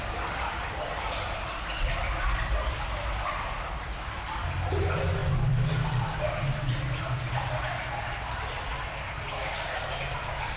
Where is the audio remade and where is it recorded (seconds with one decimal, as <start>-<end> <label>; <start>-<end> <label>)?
0.0-10.6 recorded